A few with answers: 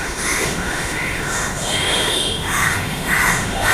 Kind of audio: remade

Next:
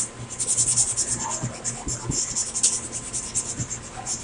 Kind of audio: recorded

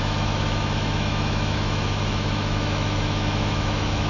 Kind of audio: remade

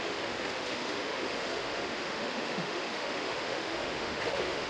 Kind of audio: remade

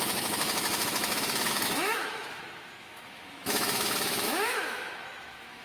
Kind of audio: remade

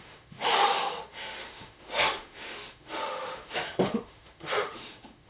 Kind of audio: remade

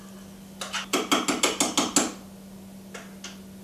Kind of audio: recorded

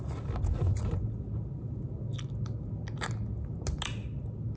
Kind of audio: recorded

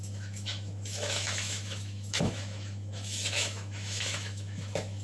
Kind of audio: remade